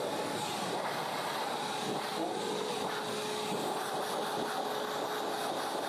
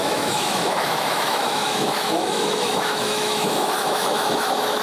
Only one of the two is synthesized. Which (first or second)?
second